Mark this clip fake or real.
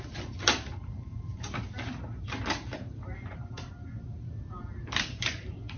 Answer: fake